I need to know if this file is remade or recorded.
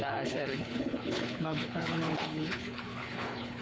remade